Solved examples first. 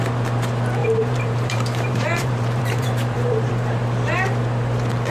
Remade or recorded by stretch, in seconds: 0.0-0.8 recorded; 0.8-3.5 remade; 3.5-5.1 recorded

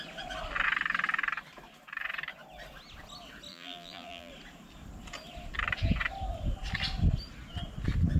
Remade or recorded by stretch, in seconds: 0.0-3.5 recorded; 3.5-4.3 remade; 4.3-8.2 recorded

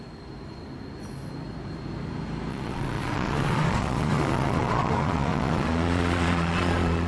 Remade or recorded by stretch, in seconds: 0.0-2.5 recorded; 2.5-7.1 remade

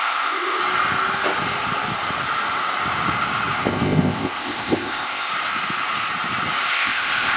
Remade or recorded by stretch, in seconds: 0.0-0.6 remade; 0.6-3.6 recorded; 3.6-5.3 remade; 5.3-6.7 recorded; 6.7-7.4 remade

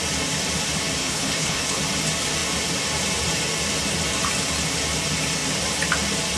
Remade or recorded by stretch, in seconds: 0.0-1.0 recorded; 1.0-1.8 remade; 1.8-6.4 recorded

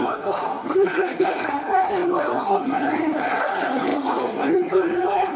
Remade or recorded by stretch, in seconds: 0.0-5.4 remade

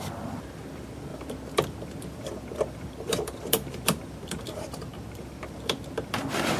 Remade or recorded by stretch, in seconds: 0.0-6.6 remade